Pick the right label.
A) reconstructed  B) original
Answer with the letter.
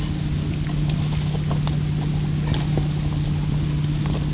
B